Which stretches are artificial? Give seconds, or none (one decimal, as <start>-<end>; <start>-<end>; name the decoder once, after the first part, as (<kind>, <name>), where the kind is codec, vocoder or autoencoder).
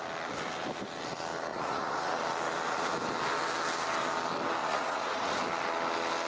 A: 1.5-2.1 (vocoder, Vocos); 4.6-5.4